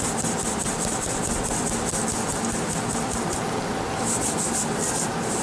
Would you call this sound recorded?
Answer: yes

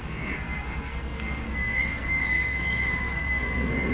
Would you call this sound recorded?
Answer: no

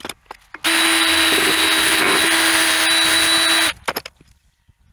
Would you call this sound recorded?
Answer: yes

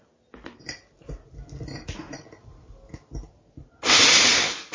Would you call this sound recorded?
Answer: yes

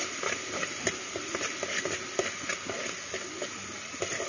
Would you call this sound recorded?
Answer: yes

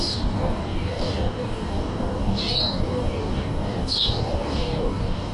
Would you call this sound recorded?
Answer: no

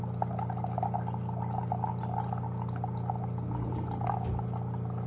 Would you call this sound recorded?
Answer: yes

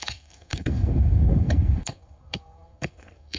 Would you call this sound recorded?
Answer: no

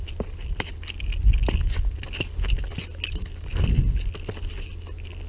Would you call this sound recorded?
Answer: yes